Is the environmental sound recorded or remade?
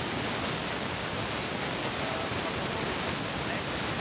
recorded